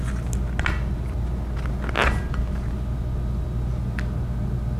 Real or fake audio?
real